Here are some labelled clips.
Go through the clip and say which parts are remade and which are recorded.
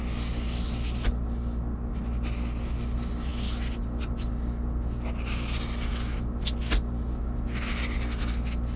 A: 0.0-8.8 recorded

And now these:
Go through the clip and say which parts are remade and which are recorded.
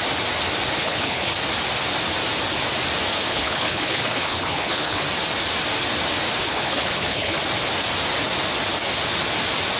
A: 0.0-0.8 recorded; 0.8-1.3 remade; 1.3-3.3 recorded; 3.3-5.0 remade; 5.0-6.4 recorded; 6.4-7.4 remade; 7.4-9.8 recorded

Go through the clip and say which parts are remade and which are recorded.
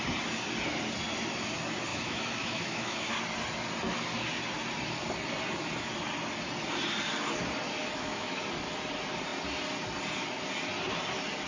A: 0.0-1.9 recorded; 1.9-3.1 remade; 3.1-7.8 recorded; 7.8-8.4 remade; 8.4-11.5 recorded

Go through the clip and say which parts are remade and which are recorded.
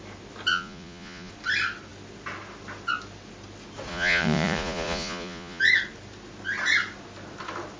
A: 0.0-0.5 recorded; 0.5-1.3 remade; 1.3-3.9 recorded; 3.9-5.6 remade; 5.6-7.8 recorded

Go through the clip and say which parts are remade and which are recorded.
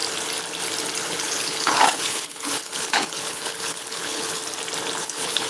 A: 0.0-1.0 recorded; 1.0-4.4 remade; 4.4-5.0 recorded; 5.0-5.5 remade